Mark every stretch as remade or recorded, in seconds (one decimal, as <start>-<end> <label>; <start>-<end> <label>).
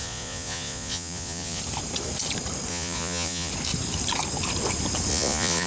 0.0-1.6 remade; 1.6-2.7 recorded; 2.7-3.5 remade; 3.5-5.1 recorded; 5.1-5.7 remade